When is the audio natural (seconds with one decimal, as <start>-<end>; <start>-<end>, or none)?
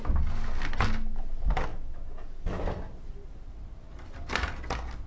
0.0-5.1